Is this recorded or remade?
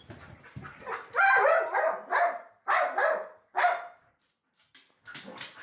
recorded